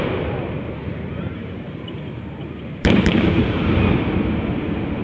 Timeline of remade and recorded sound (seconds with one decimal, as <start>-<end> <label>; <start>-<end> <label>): 0.0-0.8 recorded; 0.8-3.8 remade; 3.8-5.0 recorded